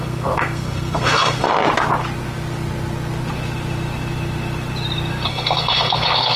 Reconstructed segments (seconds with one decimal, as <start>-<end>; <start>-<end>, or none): 0.0-1.5; 5.3-6.4

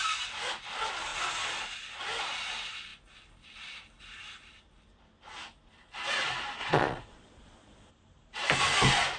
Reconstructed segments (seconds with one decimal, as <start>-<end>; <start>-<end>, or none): 6.6-7.9

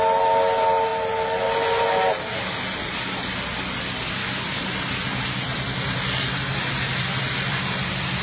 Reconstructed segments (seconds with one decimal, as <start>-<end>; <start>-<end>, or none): none

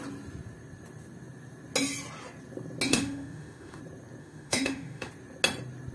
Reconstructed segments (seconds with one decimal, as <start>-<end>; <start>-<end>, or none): 2.9-3.8; 4.2-5.1

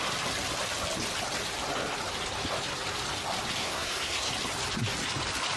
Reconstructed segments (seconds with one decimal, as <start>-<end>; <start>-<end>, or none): 3.6-4.3